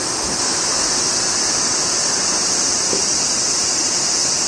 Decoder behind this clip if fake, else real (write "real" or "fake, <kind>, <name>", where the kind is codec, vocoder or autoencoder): real